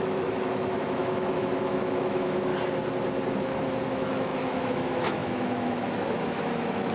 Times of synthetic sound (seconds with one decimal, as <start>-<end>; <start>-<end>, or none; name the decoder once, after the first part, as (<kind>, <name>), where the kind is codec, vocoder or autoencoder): 0.0-2.5 (autoencoder, DAC-VAE); 3.9-6.9